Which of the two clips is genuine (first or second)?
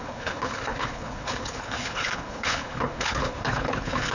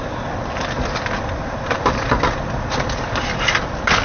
second